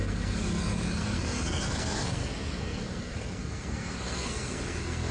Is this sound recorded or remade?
remade